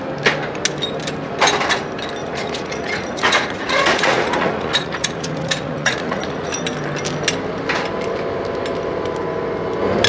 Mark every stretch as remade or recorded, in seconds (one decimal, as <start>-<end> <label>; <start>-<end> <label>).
0.0-2.2 recorded; 2.2-6.6 remade; 6.6-10.1 recorded